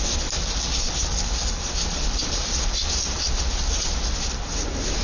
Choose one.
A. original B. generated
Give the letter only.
A